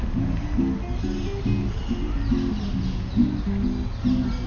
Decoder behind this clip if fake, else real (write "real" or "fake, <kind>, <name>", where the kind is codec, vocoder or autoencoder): real